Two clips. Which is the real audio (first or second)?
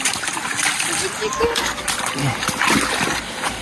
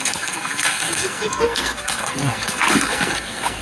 first